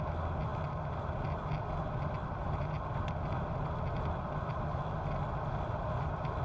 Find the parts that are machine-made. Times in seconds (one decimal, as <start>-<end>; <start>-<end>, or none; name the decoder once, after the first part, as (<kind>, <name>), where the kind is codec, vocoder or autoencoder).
none